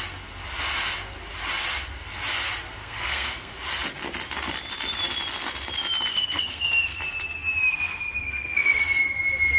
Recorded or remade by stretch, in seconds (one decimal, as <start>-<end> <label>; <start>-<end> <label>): 0.0-2.8 recorded; 2.8-3.6 remade; 3.6-6.1 recorded; 6.1-7.0 remade; 7.0-7.7 recorded; 7.7-8.8 remade; 8.8-9.6 recorded